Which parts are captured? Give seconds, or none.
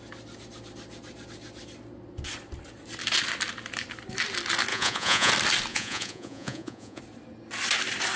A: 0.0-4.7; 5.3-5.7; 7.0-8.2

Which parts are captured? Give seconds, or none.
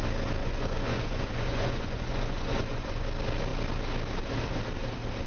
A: 0.0-0.4; 3.1-5.3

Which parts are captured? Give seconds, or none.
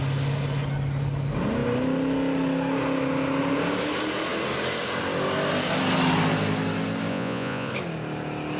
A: 0.0-7.1; 7.7-8.6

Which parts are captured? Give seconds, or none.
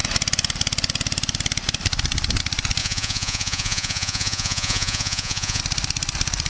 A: 0.0-2.8; 5.6-6.5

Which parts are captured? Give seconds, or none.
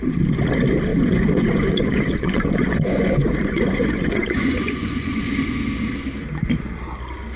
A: 0.0-0.9; 5.3-7.4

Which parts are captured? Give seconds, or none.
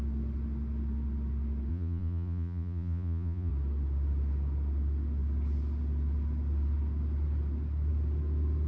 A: 0.0-1.7; 3.5-8.7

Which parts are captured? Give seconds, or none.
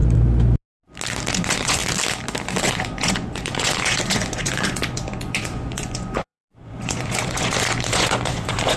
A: 0.0-1.3; 1.8-2.6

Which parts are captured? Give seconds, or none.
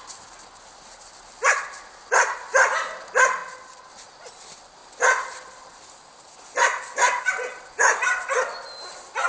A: 0.0-9.3